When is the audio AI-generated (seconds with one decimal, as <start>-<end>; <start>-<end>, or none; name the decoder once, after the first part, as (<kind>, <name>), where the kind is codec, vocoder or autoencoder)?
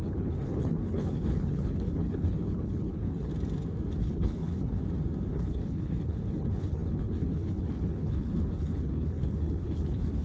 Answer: 0.0-3.3 (codec, HILCodec); 4.0-4.8; 5.3-10.2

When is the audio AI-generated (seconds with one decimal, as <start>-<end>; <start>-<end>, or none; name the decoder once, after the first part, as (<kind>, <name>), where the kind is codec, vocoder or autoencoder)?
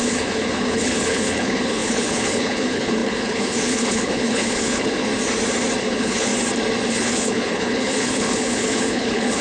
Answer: 0.0-5.1 (codec, HILCodec); 5.8-6.3; 6.9-9.4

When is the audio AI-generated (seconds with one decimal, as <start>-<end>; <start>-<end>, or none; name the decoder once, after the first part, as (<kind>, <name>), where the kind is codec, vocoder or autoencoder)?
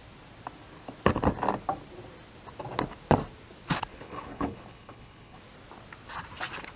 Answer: 3.9-5.4 (codec, HILCodec)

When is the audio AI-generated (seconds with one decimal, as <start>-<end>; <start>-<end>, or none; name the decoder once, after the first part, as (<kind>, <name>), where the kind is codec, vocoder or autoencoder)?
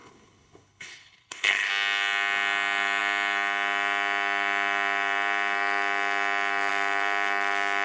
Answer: 0.0-1.7 (codec, HILCodec)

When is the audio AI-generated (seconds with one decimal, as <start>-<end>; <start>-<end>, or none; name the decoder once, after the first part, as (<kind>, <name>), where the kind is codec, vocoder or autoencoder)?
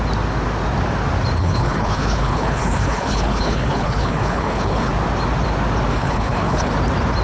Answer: 1.4-4.9 (codec, HILCodec); 5.9-6.7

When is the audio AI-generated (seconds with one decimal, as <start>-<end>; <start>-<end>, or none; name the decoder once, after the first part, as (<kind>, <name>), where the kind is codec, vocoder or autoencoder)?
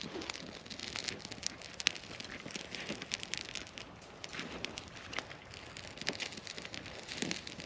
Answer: none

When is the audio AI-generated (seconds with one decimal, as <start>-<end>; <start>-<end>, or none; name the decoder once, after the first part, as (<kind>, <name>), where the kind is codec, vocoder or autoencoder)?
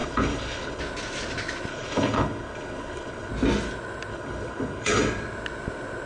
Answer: 0.0-0.8 (codec, HILCodec); 1.7-3.3; 4.1-5.0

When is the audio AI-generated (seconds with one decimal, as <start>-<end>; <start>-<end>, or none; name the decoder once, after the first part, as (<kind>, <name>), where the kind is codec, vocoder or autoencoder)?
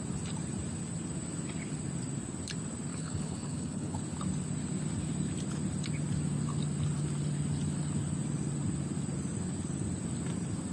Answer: 2.9-4.0 (codec, HILCodec)